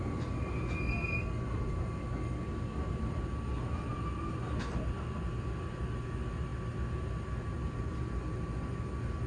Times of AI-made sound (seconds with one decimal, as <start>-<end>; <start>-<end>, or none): 2.0-2.8